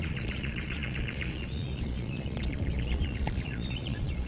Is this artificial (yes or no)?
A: yes